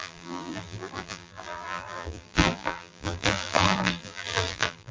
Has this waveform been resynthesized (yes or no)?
yes